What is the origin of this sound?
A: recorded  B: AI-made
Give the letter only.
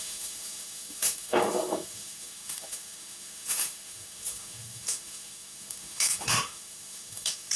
B